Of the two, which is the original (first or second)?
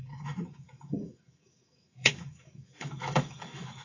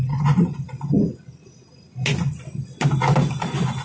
second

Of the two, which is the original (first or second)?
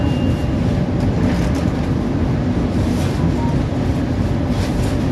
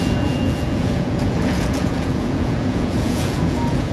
first